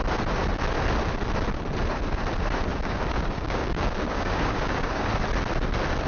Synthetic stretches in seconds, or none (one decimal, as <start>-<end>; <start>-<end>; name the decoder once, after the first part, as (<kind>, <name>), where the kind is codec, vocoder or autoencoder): 2.7-5.1 (codec, DAC)